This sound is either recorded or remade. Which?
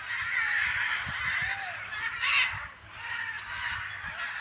recorded